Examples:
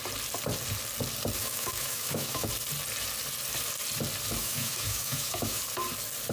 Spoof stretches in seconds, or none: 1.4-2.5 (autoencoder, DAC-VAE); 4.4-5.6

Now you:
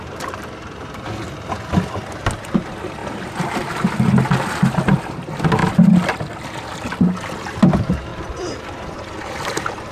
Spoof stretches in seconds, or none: 8.1-8.9 (vocoder, BigVGAN v2)